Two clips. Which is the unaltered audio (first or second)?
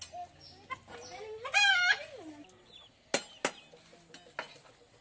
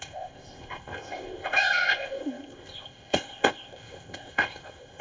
first